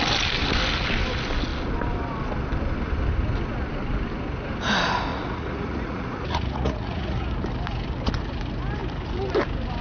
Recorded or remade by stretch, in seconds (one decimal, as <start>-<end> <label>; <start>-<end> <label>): 0.0-5.1 recorded; 5.1-7.3 remade; 7.3-9.8 recorded